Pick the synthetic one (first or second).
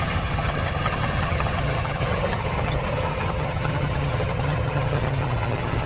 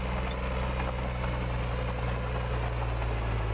first